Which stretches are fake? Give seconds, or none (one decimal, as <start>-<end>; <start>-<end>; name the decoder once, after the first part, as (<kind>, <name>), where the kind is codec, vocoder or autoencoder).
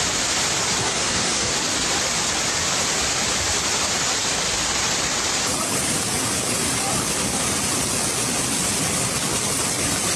0.8-1.5 (codec, SNAC)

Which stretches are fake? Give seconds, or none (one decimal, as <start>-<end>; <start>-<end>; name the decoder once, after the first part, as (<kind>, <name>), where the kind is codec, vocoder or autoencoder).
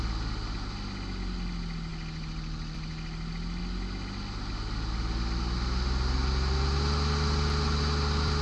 none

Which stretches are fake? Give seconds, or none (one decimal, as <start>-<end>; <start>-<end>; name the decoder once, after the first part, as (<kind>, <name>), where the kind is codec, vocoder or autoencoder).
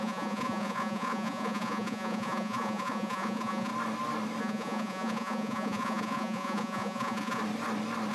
0.0-3.7 (vocoder, Vocos); 4.4-7.4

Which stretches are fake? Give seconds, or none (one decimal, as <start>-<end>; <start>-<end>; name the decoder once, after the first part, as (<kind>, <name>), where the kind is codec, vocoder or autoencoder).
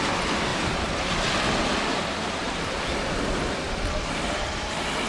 0.5-1.2 (vocoder, BigVGAN v2); 1.9-2.6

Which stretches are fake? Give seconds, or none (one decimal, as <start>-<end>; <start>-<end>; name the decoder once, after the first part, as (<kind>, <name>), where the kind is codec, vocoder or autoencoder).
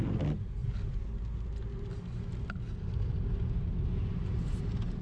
none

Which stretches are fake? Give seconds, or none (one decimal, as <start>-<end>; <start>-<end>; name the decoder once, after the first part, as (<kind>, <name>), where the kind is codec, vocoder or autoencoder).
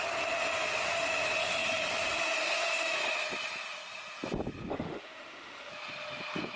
4.7-5.7 (autoencoder, DAC-VAE)